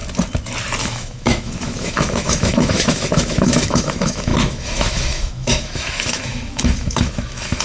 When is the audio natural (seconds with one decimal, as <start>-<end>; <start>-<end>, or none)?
0.0-0.8